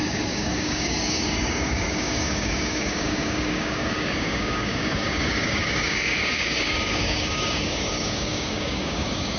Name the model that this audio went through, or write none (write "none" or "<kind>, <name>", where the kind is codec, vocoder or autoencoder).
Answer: codec, DAC